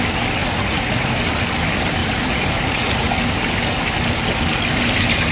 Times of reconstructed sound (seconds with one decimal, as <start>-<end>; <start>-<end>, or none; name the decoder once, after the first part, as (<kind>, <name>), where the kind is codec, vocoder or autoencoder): 0.4-1.1 (vocoder, Vocos); 2.0-3.1